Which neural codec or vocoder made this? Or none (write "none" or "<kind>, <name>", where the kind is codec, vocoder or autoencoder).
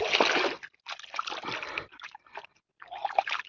none